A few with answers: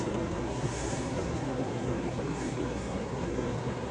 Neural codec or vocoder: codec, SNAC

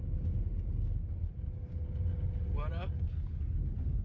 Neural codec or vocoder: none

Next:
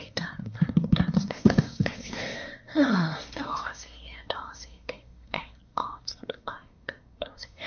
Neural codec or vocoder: codec, SNAC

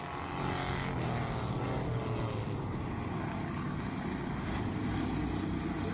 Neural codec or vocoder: none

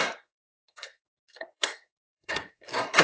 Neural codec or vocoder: codec, SNAC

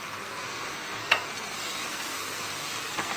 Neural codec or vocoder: codec, SNAC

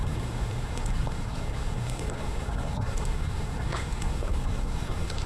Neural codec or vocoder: codec, SNAC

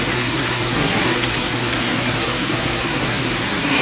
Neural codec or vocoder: codec, SNAC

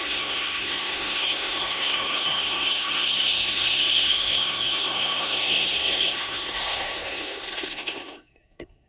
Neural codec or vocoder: codec, SNAC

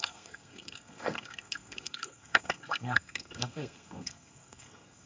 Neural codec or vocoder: codec, SNAC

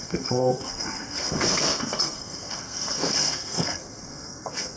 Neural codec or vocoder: codec, SNAC